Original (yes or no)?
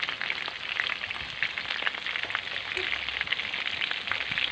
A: yes